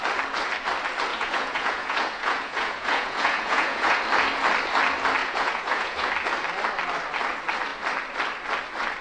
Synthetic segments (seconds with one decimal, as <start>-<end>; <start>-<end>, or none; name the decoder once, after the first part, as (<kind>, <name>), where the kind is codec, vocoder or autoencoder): 1.1-4.0 (vocoder, Vocos); 5.2-6.1